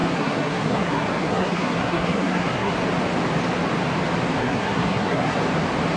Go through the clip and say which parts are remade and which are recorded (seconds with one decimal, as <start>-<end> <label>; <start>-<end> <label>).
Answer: 0.0-2.7 remade; 2.7-4.4 recorded; 4.4-5.4 remade; 5.4-6.0 recorded